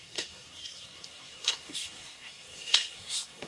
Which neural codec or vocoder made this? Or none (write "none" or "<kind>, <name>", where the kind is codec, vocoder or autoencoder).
codec, SNAC